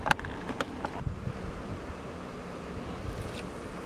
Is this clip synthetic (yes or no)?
no